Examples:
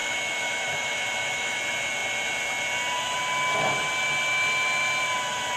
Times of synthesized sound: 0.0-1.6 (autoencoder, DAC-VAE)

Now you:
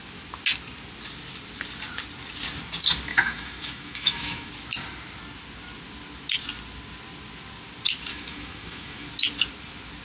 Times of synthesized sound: 3.1-4.5 (autoencoder, DAC-VAE); 8.1-9.1

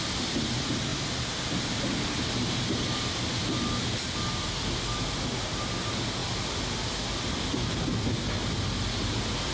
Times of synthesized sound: none

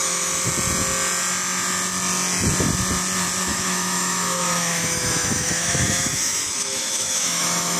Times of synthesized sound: 0.0-0.5 (autoencoder, DAC-VAE); 3.5-7.8